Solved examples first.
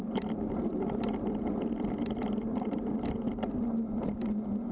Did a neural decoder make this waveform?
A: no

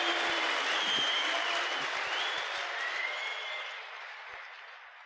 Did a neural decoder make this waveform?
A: no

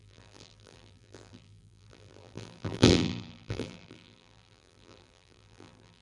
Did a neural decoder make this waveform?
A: yes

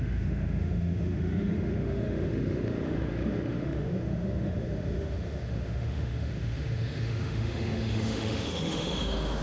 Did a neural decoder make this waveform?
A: yes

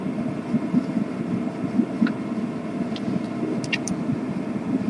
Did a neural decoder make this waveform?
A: no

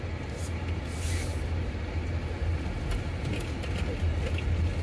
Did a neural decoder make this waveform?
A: no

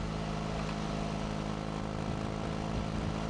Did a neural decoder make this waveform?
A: no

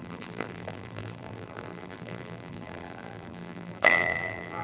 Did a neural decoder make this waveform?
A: yes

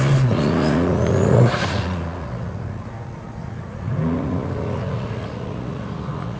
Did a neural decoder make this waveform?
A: yes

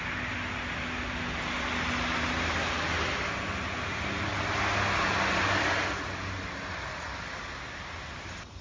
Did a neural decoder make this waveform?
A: no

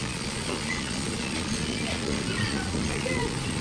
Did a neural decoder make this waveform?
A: yes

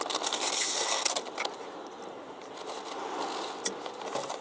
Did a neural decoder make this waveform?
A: no